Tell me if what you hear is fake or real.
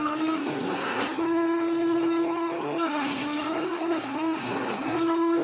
fake